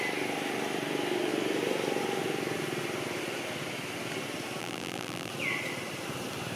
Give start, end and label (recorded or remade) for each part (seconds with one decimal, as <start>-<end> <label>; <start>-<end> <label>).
0.0-4.6 recorded; 4.6-5.3 remade; 5.3-6.6 recorded